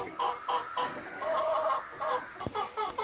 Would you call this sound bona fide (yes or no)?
yes